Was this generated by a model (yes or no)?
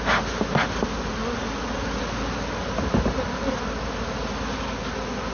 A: no